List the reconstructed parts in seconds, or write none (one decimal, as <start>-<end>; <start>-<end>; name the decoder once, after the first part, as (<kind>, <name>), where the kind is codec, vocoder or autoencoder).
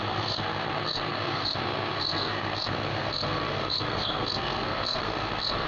0.0-5.7 (codec, SNAC)